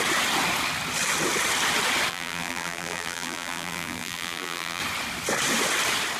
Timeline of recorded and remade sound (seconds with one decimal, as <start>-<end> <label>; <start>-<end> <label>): 0.0-2.1 recorded; 2.1-4.8 remade; 4.8-6.2 recorded